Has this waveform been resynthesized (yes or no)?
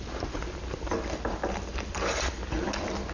no